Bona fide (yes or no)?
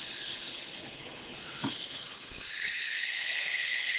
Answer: no